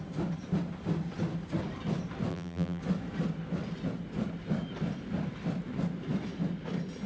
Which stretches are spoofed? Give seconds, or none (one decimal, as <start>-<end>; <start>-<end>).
2.3-2.8